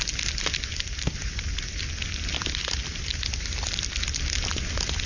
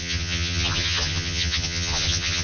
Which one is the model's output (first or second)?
second